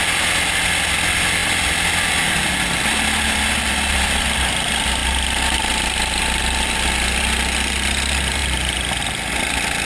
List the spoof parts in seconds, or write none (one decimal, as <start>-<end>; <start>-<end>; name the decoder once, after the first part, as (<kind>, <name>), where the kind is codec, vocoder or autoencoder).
none